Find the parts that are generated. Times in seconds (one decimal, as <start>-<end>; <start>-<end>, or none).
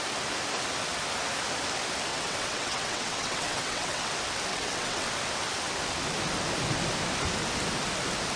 2.1-4.1; 4.5-5.1